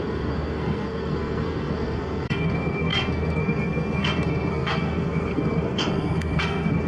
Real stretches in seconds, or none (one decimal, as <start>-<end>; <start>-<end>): none